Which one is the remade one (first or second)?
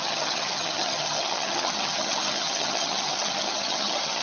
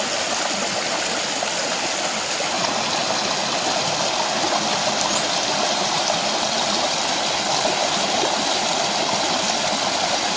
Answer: first